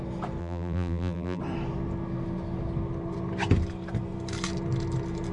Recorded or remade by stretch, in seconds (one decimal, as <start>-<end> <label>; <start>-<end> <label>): 0.0-0.4 recorded; 0.4-1.4 remade; 1.4-5.3 recorded